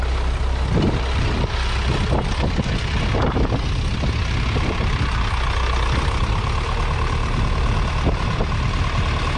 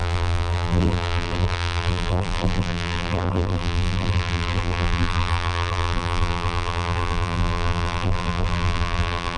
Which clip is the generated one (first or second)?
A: second